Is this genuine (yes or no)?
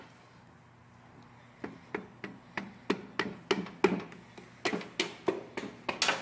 yes